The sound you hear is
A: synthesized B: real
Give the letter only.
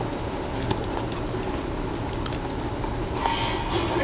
B